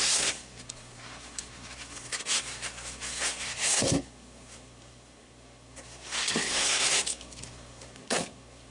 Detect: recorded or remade remade